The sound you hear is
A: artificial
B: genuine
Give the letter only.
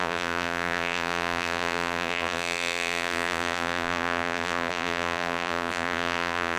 A